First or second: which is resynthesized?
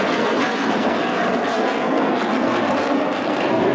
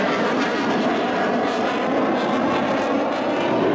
first